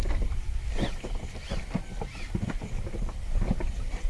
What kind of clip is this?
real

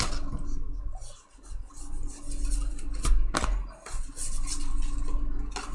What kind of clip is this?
real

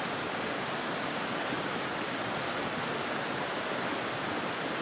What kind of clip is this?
real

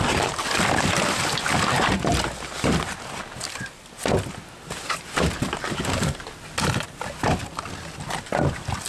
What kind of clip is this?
real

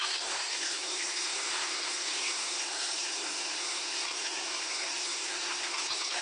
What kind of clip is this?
fake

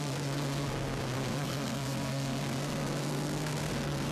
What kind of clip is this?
fake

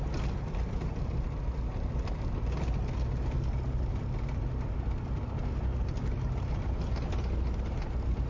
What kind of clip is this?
real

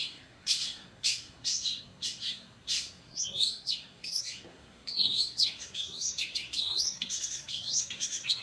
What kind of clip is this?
fake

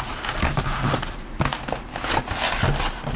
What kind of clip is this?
real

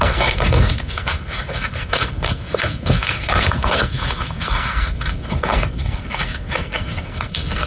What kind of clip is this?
fake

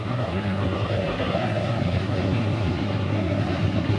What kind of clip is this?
fake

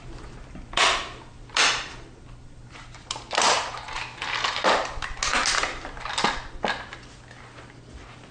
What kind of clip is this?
real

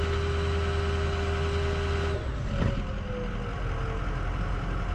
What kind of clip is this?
real